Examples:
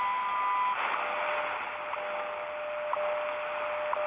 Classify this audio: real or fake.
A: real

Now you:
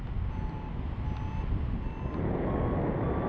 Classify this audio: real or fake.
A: real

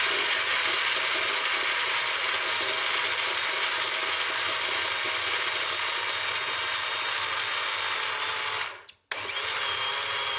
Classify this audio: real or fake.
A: real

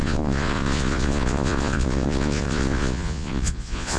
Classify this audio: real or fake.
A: fake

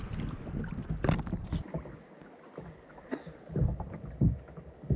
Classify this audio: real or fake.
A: real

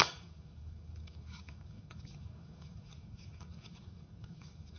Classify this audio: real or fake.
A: fake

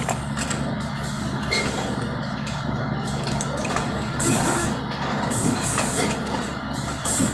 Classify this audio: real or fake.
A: fake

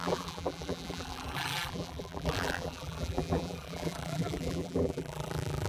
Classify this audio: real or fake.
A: fake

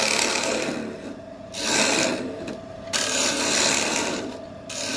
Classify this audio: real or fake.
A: real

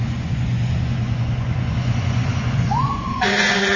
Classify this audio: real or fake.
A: fake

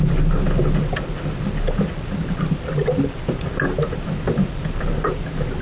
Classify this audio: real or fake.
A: real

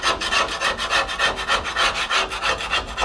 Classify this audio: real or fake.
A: real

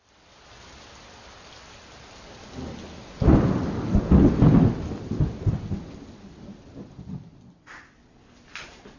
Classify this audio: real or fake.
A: real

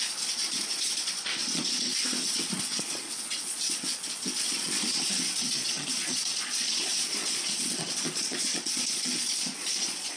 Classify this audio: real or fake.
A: fake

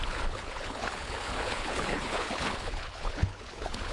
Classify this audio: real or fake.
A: fake